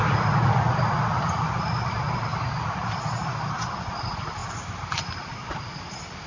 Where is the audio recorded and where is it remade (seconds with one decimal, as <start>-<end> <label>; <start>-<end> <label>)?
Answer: 0.0-1.9 remade; 1.9-2.3 recorded; 2.3-3.4 remade; 3.4-6.3 recorded